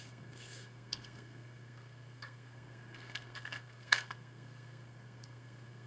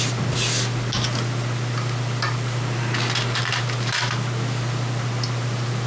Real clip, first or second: second